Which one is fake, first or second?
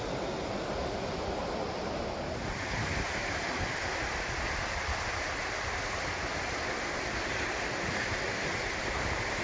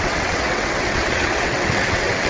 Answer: second